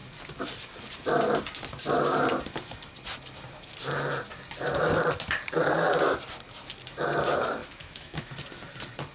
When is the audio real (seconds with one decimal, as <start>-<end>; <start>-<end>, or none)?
0.0-7.6; 8.3-9.1